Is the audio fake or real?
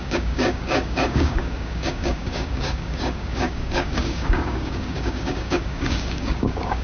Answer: fake